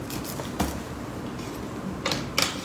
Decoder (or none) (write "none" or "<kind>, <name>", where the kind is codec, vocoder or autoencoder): none